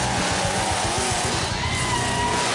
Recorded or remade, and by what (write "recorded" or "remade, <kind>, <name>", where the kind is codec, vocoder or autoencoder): remade, vocoder, Vocos